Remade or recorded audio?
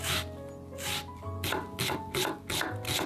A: recorded